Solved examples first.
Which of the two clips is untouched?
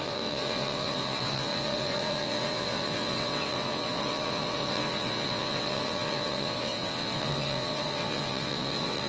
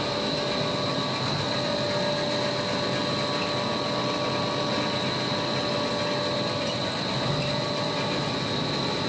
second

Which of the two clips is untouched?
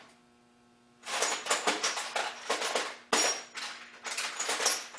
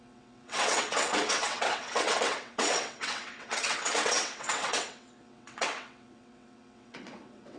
first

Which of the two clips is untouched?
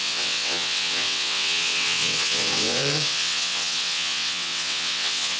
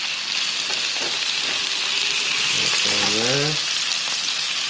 second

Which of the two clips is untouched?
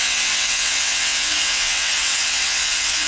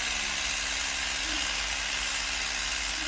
second